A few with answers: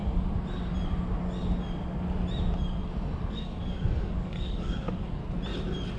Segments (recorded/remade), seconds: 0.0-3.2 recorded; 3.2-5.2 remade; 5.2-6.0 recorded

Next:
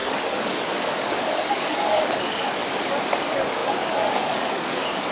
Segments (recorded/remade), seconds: 0.0-2.6 remade; 2.6-3.2 recorded; 3.2-5.1 remade

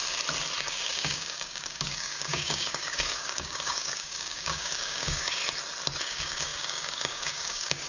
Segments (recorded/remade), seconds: 0.0-0.6 recorded; 0.6-5.4 remade; 5.4-6.0 recorded; 6.0-7.9 remade

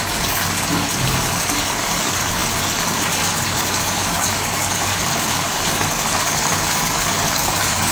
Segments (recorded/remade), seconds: 0.0-7.9 remade

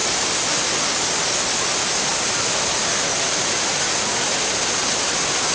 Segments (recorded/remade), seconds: 0.0-5.5 recorded

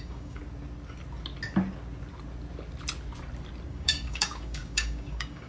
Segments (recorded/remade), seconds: 0.0-0.4 remade; 0.4-3.7 recorded; 3.7-5.5 remade

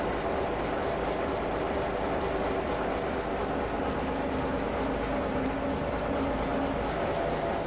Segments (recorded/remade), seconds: 0.0-7.7 recorded

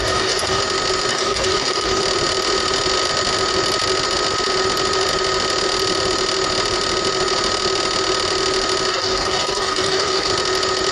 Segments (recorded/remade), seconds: 0.0-0.6 remade; 0.6-1.1 recorded; 1.1-2.0 remade; 2.0-8.9 recorded; 8.9-10.3 remade; 10.3-10.9 recorded